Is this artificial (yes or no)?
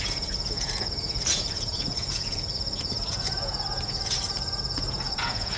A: yes